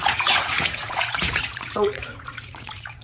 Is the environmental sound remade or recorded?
remade